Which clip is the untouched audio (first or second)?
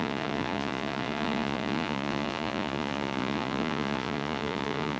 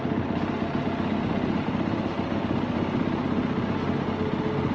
second